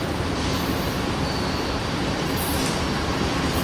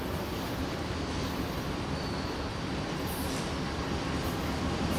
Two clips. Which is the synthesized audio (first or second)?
first